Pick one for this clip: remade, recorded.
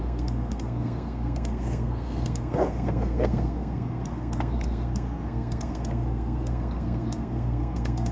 remade